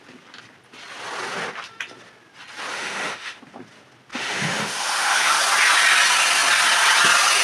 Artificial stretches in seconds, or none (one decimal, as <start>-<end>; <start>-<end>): 2.7-3.4; 4.1-5.4